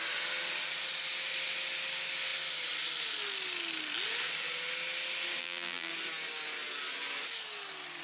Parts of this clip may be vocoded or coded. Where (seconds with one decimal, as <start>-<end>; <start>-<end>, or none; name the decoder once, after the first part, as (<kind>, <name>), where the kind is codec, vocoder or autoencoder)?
5.4-5.9 (vocoder, BigVGAN v2)

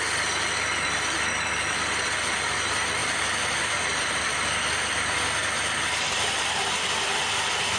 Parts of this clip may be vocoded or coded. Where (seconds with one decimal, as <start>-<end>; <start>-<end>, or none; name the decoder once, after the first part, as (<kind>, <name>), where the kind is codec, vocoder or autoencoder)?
3.0-4.1 (vocoder, BigVGAN v2); 5.4-6.8

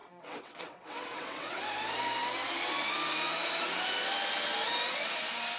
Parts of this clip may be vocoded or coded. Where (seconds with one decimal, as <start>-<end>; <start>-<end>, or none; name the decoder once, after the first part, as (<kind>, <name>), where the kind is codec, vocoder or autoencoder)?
0.0-1.6 (vocoder, WaveNeXt)

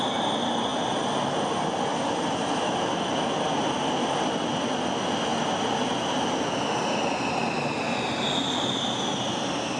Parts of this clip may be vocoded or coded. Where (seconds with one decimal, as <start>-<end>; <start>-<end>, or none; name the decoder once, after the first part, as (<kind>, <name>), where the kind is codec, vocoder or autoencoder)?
none

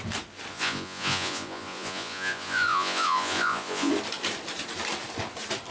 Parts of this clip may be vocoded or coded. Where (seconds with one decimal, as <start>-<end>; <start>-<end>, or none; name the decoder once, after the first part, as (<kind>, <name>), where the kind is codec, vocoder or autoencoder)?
0.5-3.9 (vocoder, Vocos)

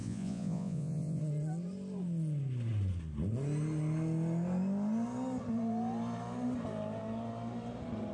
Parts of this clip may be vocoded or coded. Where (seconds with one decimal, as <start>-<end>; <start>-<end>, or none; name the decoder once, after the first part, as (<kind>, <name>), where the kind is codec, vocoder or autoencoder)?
0.0-1.2 (vocoder, Vocos)

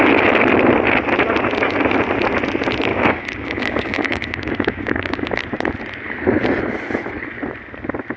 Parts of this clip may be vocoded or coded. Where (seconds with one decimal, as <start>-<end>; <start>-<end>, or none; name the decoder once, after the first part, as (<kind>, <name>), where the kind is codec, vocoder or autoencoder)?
2.9-5.3 (codec, DAC)

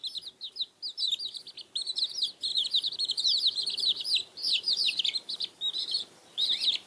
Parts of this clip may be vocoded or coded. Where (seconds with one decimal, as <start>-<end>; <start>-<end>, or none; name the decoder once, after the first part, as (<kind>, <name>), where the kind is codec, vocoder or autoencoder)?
2.5-6.9 (vocoder, BigVGAN v2)